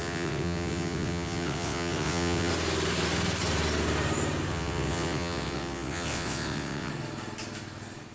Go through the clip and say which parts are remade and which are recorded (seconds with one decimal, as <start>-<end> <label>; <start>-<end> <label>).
0.0-2.5 remade; 2.5-4.5 recorded; 4.5-6.9 remade; 6.9-8.1 recorded